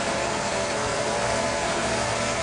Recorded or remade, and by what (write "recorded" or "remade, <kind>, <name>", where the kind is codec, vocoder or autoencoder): remade, codec, SNAC